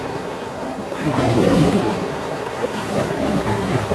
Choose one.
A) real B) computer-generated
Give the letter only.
B